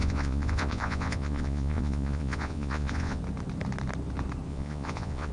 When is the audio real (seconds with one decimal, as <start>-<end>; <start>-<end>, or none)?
3.2-4.5

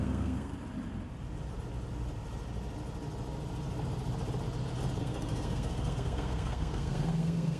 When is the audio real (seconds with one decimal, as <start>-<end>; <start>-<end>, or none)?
0.5-5.0

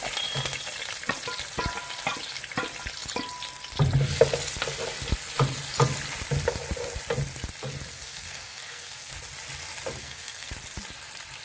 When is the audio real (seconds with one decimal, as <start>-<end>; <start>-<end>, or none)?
0.0-7.9; 9.1-10.0; 10.5-11.4

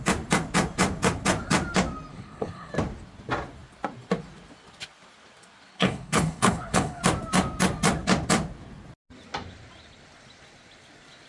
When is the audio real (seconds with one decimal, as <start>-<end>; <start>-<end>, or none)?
0.0-2.1; 2.7-5.7; 7.0-11.3

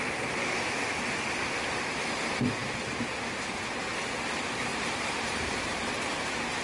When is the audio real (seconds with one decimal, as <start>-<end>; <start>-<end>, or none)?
0.0-4.7; 5.9-6.6

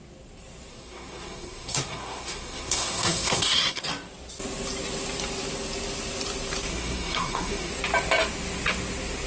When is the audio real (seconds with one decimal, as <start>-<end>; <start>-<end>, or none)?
0.0-0.7; 3.8-6.7; 7.7-9.3

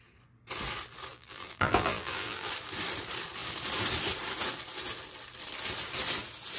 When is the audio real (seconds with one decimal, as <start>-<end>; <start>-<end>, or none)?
0.0-1.1; 2.5-6.6

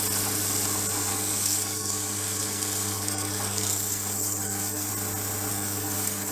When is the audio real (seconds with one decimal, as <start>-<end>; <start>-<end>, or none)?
0.0-1.1; 4.9-5.5